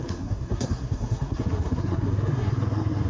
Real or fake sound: fake